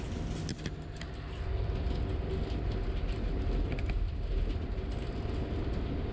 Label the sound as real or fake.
real